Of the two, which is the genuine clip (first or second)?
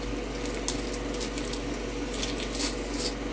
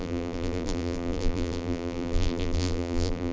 first